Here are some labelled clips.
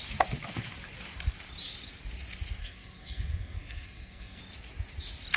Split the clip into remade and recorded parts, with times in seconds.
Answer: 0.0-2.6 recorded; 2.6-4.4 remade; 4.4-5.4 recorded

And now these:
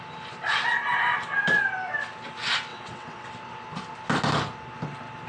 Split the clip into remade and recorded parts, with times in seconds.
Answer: 0.0-2.7 recorded; 2.7-3.3 remade; 3.3-5.3 recorded

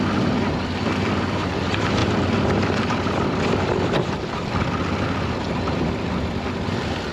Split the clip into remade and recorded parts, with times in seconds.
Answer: 0.0-7.1 recorded

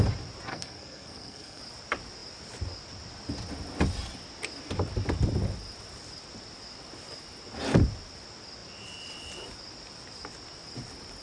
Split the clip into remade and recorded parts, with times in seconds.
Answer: 0.0-0.5 recorded; 0.5-1.6 remade; 1.6-11.2 recorded

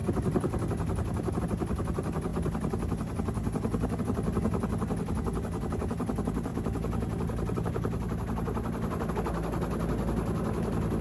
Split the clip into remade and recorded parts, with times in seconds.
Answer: 0.0-11.0 recorded

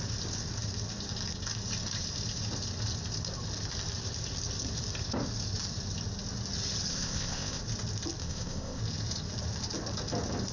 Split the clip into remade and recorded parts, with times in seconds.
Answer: 0.0-6.9 recorded; 6.9-7.6 remade; 7.6-8.2 recorded; 8.2-8.8 remade; 8.8-10.5 recorded

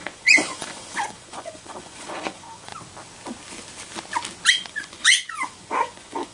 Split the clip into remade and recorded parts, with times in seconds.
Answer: 0.0-2.7 remade; 2.7-4.5 recorded; 4.5-6.3 remade